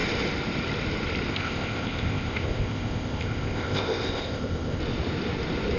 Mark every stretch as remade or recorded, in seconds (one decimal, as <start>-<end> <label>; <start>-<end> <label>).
0.0-1.3 recorded; 1.3-4.8 remade; 4.8-5.8 recorded